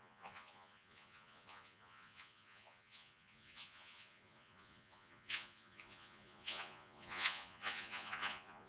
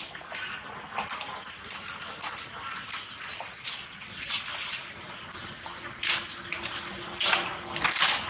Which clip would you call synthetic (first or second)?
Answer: first